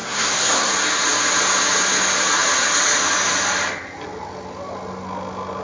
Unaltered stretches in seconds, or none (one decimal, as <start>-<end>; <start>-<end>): 0.7-5.6